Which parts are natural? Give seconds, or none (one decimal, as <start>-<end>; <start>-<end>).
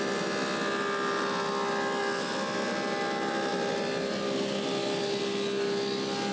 0.0-6.3